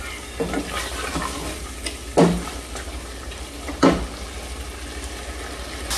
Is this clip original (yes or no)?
yes